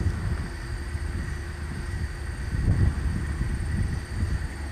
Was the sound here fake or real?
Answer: real